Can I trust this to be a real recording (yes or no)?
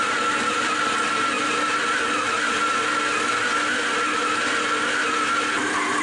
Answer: yes